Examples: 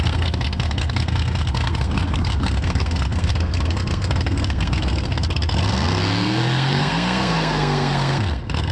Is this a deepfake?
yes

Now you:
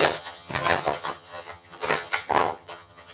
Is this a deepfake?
yes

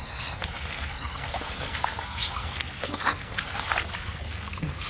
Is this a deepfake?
yes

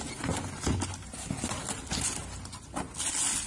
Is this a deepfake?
no